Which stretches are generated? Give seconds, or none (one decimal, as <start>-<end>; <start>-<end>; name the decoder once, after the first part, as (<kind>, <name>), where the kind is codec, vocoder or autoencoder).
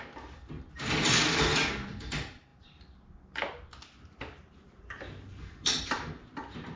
none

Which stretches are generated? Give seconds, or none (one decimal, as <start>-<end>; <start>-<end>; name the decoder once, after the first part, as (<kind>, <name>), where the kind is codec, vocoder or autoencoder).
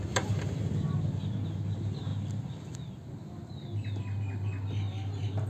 none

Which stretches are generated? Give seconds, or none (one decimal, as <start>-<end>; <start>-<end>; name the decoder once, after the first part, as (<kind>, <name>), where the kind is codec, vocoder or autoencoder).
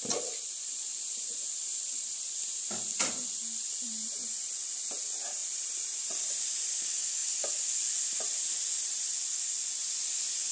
none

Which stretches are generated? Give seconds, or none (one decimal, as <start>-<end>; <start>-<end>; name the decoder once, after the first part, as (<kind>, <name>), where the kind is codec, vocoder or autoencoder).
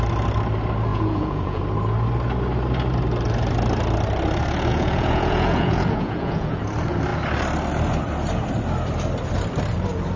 0.9-1.6 (vocoder, Vocos); 4.7-6.6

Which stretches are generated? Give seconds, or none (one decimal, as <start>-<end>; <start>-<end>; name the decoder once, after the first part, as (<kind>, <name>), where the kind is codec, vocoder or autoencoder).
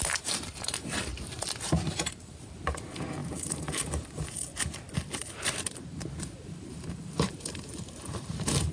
0.0-1.1 (vocoder, BigVGAN v2); 1.9-8.7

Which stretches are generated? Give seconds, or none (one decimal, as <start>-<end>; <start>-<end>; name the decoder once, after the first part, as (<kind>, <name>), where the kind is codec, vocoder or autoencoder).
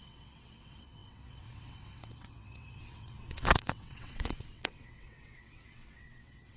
0.0-6.6 (vocoder, WaveNeXt)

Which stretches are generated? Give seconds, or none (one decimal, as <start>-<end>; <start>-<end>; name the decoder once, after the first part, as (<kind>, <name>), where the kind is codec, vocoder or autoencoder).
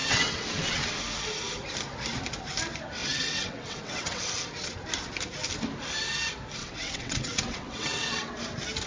0.0-1.0 (vocoder, WaveNeXt); 3.0-4.2; 6.6-8.3